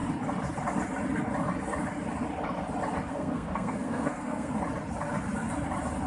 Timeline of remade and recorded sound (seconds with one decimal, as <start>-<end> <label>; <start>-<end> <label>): 0.0-3.1 recorded; 3.1-4.5 remade; 4.5-6.1 recorded